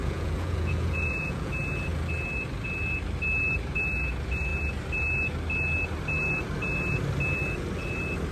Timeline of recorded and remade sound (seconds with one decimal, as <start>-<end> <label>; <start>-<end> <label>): 0.0-1.5 remade; 1.5-8.3 recorded

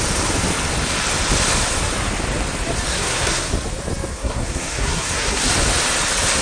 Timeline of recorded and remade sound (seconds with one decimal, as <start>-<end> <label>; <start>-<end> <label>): 0.0-2.9 recorded; 2.9-3.5 remade; 3.5-4.1 recorded; 4.1-5.5 remade; 5.5-6.4 recorded

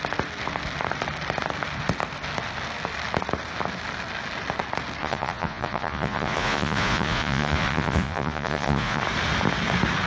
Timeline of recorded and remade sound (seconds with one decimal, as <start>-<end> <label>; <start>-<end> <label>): 0.0-5.0 recorded; 5.0-9.0 remade; 9.0-10.1 recorded